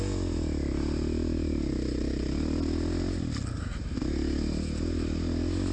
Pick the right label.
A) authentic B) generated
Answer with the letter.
A